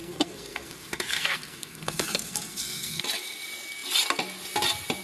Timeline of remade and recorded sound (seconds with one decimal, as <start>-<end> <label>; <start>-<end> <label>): 0.0-3.0 remade; 3.0-5.0 recorded